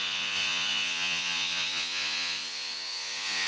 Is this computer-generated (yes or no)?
yes